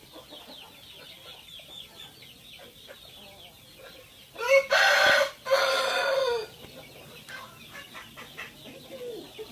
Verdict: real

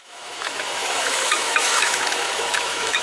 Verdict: fake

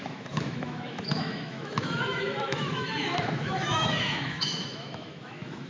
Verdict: fake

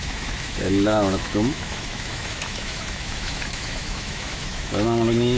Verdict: fake